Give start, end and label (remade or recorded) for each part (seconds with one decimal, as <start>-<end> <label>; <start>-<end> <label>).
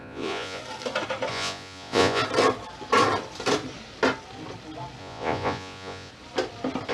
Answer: 0.0-0.6 remade; 0.6-1.3 recorded; 1.3-2.2 remade; 2.2-5.0 recorded; 5.0-6.1 remade; 6.1-6.9 recorded